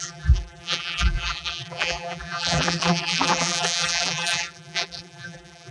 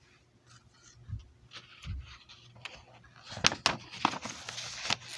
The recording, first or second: second